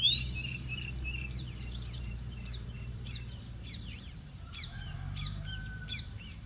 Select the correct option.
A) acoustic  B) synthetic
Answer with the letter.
B